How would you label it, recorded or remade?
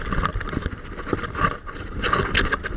recorded